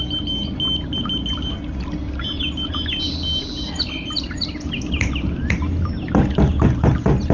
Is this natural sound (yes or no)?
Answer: yes